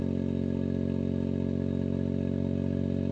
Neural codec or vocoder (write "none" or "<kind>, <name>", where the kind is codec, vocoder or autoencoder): none